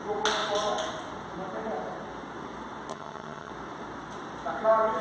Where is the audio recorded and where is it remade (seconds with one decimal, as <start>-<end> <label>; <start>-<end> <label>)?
0.0-2.9 recorded; 2.9-3.5 remade; 3.5-5.0 recorded